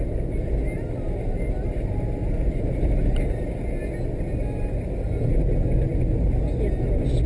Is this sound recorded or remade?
recorded